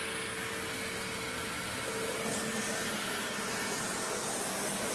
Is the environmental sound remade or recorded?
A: recorded